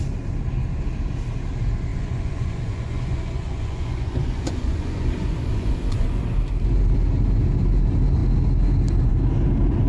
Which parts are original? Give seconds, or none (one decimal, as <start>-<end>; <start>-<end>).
0.0-1.9; 6.2-9.9